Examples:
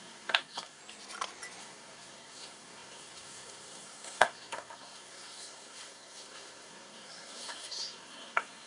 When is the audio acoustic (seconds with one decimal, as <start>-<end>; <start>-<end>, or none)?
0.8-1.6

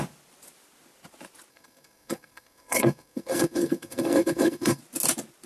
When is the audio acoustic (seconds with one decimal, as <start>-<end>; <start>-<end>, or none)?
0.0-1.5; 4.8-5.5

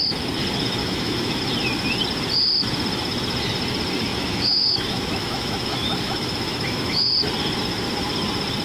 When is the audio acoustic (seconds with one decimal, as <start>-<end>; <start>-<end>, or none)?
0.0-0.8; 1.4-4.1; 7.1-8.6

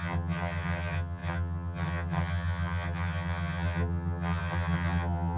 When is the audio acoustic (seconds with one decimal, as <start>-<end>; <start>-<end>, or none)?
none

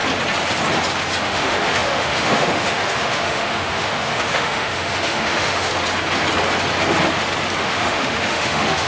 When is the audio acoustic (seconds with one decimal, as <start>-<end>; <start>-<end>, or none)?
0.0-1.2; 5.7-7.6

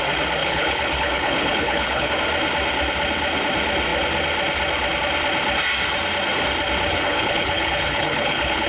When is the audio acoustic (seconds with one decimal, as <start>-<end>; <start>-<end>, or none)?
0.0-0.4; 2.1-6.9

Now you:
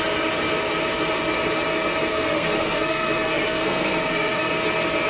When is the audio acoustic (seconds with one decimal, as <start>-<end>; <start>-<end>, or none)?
0.0-2.1; 4.5-5.1